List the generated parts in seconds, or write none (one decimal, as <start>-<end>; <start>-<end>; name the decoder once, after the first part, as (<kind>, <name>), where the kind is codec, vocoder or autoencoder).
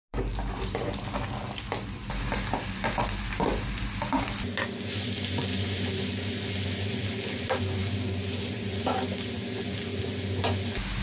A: none